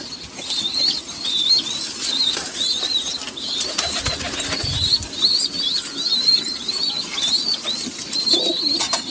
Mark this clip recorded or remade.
recorded